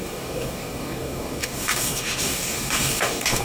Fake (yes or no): yes